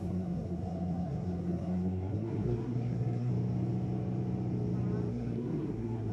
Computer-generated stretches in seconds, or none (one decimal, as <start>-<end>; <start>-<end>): 0.0-3.3; 5.1-6.1